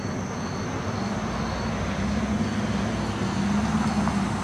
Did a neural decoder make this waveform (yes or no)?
no